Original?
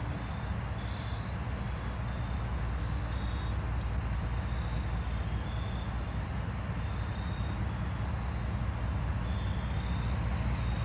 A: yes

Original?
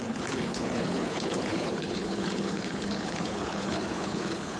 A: no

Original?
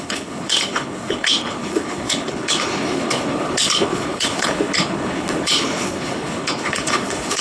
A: no